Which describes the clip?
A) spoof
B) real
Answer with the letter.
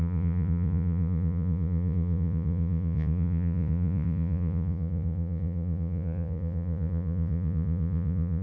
A